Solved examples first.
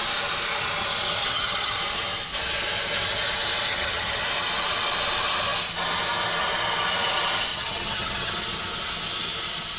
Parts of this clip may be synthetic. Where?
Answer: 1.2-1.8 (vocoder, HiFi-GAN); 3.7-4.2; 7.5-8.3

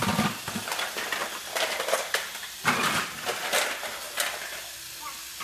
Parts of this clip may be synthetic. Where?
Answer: none

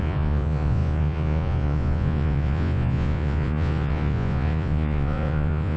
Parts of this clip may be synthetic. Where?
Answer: 0.0-5.8 (vocoder, Vocos)

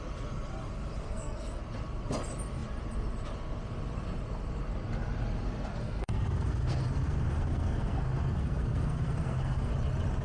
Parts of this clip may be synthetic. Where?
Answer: 1.0-1.6 (codec, SNAC); 5.8-9.7

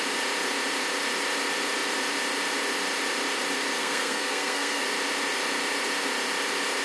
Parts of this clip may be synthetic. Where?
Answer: 3.8-4.8 (codec, SNAC)

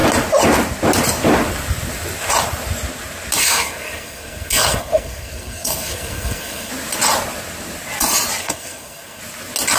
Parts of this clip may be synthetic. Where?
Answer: 3.4-6.7 (codec, SNAC); 8.4-9.2